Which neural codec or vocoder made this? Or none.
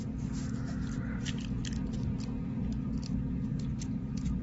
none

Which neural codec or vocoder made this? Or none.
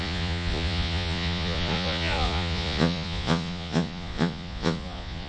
vocoder, Vocos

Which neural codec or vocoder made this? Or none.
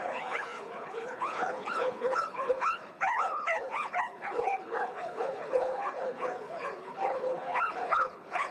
codec, HILCodec